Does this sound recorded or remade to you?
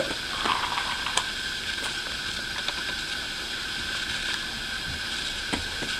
recorded